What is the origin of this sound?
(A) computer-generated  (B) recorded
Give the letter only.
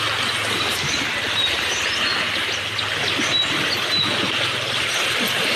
B